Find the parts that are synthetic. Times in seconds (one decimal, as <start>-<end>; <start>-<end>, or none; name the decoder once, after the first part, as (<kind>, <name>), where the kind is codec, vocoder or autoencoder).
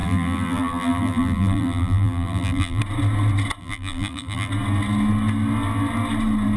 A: 0.0-2.8 (vocoder, BigVGAN v2); 3.6-4.5